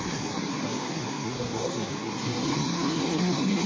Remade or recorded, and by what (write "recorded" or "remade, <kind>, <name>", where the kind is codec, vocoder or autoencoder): remade, codec, SNAC